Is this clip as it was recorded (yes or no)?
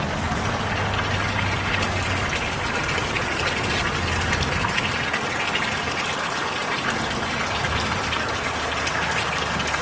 yes